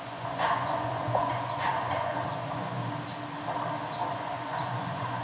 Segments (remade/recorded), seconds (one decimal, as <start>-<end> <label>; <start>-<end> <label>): 0.0-2.8 remade; 2.8-4.1 recorded; 4.1-5.2 remade